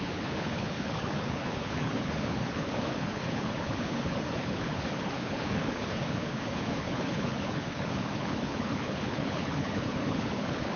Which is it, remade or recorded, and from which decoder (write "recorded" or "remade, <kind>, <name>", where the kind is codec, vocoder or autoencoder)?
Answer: remade, codec, HILCodec